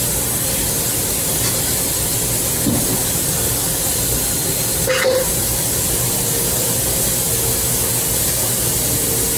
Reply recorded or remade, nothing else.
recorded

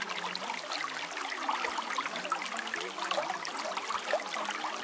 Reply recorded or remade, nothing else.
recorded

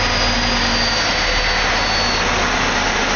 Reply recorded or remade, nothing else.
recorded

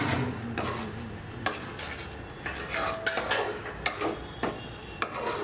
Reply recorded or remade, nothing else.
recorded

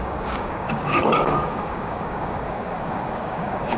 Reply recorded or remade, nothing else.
remade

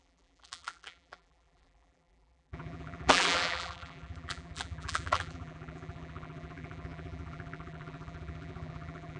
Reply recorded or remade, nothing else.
remade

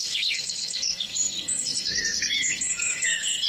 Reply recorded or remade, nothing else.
remade